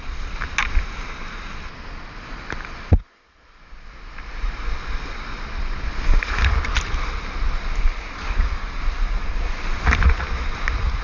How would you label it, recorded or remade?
recorded